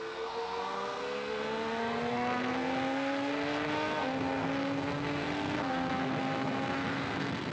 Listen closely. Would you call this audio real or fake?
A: fake